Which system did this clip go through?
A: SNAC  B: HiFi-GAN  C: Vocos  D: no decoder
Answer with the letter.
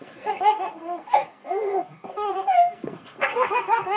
A